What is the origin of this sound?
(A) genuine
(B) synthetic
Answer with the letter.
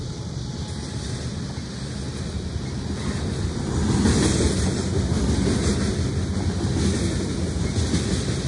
A